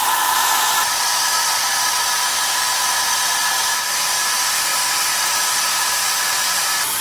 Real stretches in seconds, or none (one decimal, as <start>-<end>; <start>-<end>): 1.7-3.6; 4.7-5.8